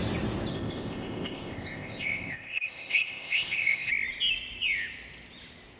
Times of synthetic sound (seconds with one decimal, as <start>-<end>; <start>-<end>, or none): 0.5-3.9